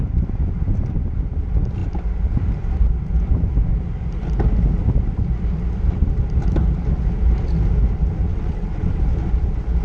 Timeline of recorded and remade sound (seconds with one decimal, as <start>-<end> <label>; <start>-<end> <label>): 0.0-8.2 recorded; 8.2-9.0 remade; 9.0-9.8 recorded